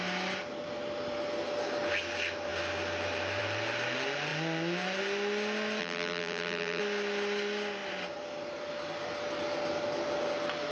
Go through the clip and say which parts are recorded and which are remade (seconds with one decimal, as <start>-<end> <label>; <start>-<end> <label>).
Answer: 0.0-5.8 recorded; 5.8-6.8 remade; 6.8-10.7 recorded

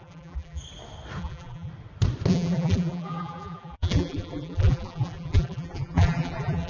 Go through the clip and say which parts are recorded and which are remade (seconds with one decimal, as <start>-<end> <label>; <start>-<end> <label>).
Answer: 0.0-0.6 remade; 0.6-1.2 recorded; 1.2-1.7 remade; 1.7-2.3 recorded; 2.3-6.7 remade

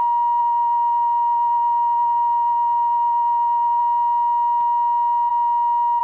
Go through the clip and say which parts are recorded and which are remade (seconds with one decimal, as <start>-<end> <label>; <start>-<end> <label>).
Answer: 0.0-0.4 recorded; 0.4-3.8 remade; 3.8-6.0 recorded

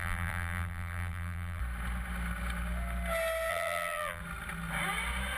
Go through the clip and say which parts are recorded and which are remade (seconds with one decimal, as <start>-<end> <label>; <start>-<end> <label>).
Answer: 0.0-1.6 remade; 1.6-3.5 recorded; 3.5-4.2 remade; 4.2-5.4 recorded

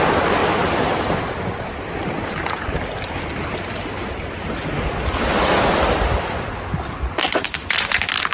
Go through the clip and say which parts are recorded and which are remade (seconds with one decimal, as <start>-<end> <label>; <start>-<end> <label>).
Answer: 0.0-0.4 recorded; 0.4-4.7 remade; 4.7-8.3 recorded

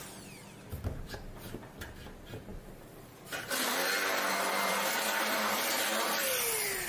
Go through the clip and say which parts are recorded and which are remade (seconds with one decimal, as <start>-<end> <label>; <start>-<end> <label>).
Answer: 0.0-6.9 recorded

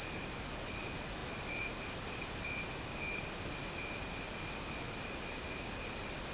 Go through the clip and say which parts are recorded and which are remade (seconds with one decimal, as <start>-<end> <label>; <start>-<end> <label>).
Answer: 0.0-1.2 recorded; 1.2-1.8 remade; 1.8-6.3 recorded

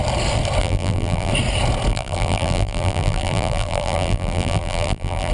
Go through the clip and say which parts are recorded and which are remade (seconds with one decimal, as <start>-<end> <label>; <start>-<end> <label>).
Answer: 0.0-0.6 recorded; 0.6-1.3 remade; 1.3-1.9 recorded; 1.9-5.3 remade